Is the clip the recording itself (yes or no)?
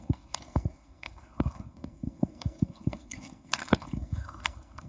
no